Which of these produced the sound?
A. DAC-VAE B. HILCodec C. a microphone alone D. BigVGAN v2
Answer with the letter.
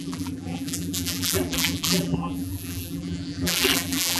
D